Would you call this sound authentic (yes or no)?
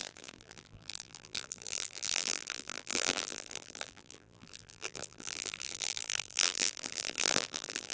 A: no